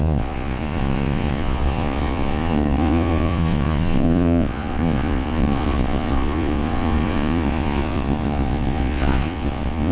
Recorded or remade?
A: remade